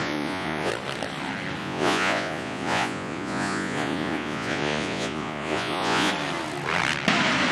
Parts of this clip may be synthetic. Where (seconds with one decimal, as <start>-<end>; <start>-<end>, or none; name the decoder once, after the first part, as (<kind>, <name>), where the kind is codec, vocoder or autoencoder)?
0.0-0.7 (vocoder, Vocos); 1.6-6.1